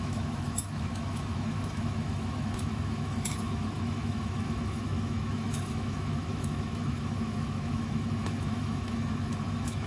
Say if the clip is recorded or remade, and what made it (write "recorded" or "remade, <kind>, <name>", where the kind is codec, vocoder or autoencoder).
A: remade, autoencoder, DAC-VAE